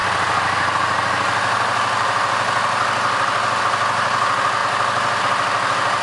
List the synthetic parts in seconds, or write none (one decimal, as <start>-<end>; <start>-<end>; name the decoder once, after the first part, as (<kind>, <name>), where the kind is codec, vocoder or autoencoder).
none